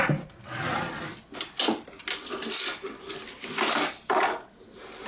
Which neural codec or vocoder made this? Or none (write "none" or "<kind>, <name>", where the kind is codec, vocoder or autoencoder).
none